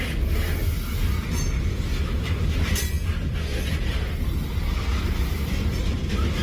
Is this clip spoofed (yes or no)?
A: no